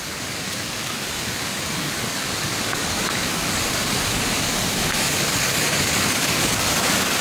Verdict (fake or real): fake